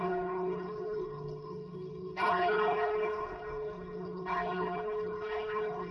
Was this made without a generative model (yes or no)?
no